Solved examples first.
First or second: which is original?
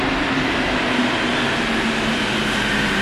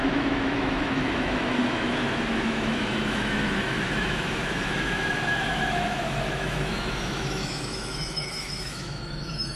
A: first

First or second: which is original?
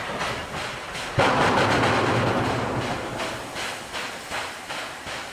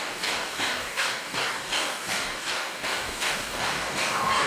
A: first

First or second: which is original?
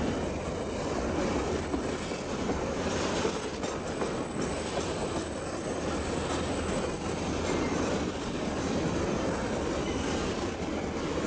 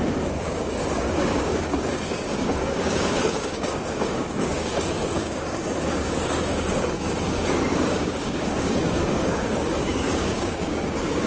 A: first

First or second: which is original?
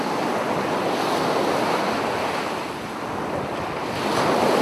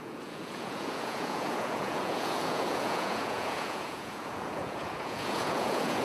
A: first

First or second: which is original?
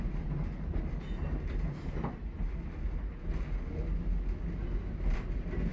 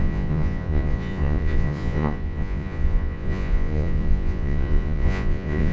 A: first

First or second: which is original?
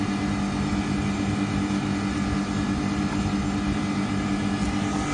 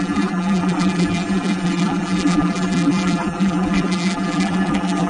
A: first